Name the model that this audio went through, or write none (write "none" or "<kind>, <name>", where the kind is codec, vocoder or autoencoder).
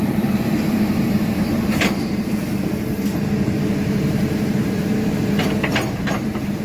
vocoder, BigVGAN v2